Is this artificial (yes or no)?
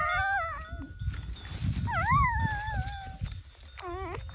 no